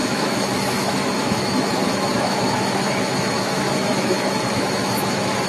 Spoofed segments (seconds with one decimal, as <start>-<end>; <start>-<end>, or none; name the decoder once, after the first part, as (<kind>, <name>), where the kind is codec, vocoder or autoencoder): 0.0-5.5 (autoencoder, DAC-VAE)